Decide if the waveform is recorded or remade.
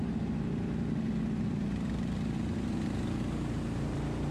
recorded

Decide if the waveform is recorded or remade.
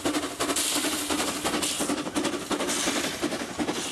recorded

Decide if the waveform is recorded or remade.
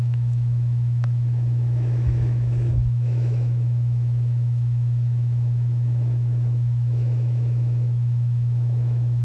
remade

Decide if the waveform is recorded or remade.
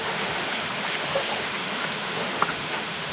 remade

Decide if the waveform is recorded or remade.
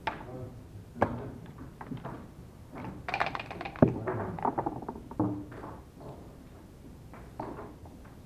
recorded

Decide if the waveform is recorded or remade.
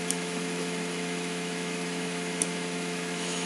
remade